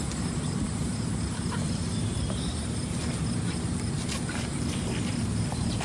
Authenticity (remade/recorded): recorded